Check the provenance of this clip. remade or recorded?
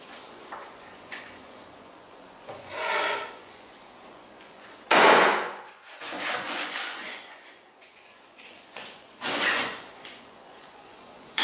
remade